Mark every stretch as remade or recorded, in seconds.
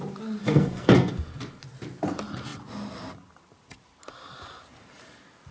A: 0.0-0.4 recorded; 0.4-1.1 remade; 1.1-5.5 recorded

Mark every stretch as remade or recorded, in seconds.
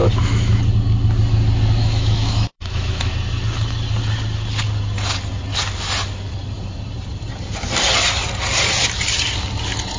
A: 0.0-0.6 remade; 0.6-1.8 recorded; 1.8-3.1 remade; 3.1-10.0 recorded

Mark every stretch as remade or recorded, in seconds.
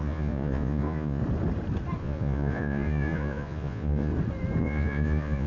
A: 0.0-1.2 remade; 1.2-2.0 recorded; 2.0-4.1 remade; 4.1-4.6 recorded; 4.6-5.5 remade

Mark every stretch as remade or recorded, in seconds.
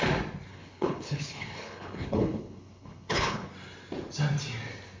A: 0.0-0.5 recorded; 0.5-3.5 remade; 3.5-5.0 recorded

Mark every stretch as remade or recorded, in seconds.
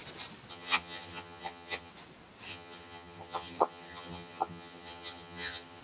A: 0.0-0.5 recorded; 0.5-1.9 remade; 1.9-2.5 recorded; 2.5-5.8 remade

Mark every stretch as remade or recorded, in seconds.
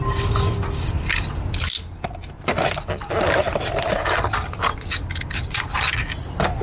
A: 0.0-6.6 recorded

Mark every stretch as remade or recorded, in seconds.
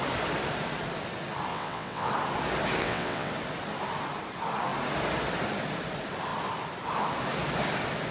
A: 0.0-1.5 recorded; 1.5-2.1 remade; 2.1-2.8 recorded; 2.8-3.3 remade; 3.3-8.1 recorded